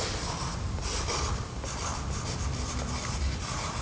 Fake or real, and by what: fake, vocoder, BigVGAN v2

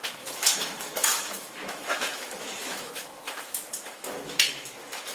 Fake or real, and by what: fake, autoencoder, DAC-VAE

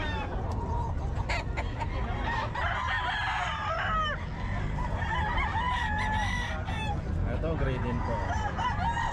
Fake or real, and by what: real